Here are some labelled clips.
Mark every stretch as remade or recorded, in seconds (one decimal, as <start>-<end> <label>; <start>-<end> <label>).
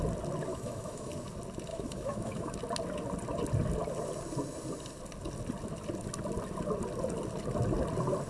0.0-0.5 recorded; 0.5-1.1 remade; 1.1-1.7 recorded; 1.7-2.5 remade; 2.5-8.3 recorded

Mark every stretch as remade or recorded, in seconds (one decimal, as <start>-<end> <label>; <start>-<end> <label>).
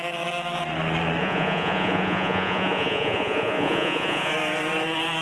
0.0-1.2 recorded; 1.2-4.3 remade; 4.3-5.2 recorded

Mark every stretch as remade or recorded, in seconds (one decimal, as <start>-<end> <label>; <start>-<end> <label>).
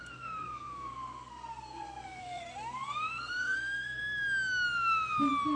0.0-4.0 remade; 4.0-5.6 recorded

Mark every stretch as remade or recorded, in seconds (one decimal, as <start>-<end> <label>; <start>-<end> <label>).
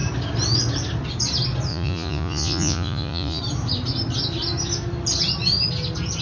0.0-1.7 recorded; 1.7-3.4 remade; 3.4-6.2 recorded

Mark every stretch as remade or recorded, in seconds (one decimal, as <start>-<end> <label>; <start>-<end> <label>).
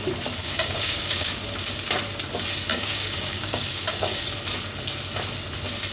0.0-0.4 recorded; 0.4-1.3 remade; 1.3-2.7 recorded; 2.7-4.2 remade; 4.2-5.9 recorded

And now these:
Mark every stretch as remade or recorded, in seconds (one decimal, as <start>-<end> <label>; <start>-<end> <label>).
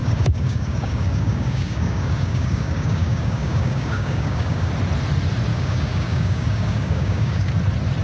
0.0-4.7 remade; 4.7-5.5 recorded; 5.5-7.5 remade; 7.5-8.0 recorded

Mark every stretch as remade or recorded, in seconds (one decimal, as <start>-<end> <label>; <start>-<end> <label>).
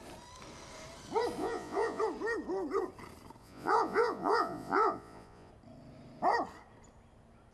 0.0-1.4 recorded; 1.4-2.0 remade; 2.0-3.4 recorded; 3.4-5.5 remade; 5.5-7.5 recorded